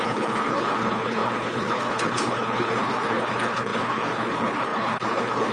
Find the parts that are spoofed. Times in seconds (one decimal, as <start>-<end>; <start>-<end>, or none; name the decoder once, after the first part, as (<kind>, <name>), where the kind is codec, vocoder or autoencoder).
0.0-5.5 (codec, HILCodec)

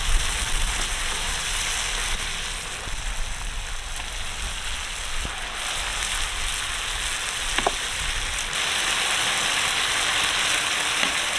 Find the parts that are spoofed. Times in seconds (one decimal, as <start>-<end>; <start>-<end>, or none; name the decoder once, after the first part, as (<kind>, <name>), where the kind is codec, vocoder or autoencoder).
none

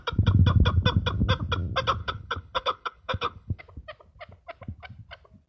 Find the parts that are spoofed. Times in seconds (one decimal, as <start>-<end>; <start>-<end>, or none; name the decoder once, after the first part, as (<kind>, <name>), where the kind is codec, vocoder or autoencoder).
2.0-3.6 (codec, HILCodec)

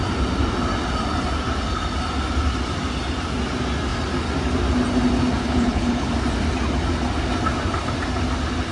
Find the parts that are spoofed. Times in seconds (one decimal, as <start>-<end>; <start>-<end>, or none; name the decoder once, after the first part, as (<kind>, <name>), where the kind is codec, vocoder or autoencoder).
5.4-6.1 (codec, HILCodec)

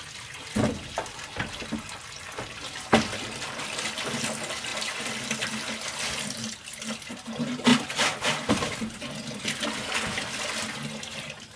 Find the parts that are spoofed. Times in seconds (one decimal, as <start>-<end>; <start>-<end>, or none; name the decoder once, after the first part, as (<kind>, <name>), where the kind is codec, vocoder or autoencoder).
none

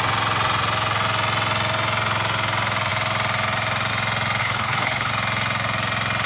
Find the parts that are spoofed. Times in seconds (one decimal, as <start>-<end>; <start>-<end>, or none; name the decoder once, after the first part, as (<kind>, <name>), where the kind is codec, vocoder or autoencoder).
4.4-5.1 (codec, HILCodec)

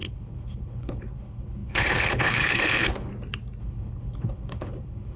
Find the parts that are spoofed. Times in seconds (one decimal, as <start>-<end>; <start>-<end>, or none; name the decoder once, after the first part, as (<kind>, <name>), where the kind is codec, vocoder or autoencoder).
0.0-3.1 (codec, HILCodec); 3.6-5.2